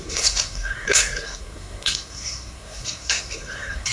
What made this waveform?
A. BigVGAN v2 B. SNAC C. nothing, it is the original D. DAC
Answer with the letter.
B